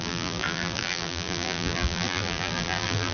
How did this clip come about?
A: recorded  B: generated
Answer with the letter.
B